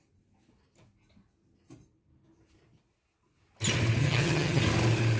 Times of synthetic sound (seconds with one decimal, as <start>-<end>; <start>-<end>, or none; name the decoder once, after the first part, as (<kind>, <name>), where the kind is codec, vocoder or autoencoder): 4.0-4.6 (vocoder, HiFi-GAN)